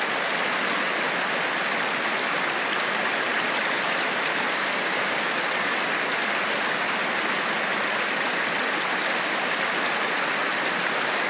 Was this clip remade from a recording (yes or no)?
no